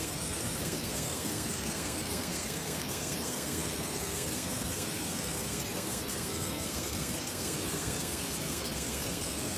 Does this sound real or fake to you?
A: fake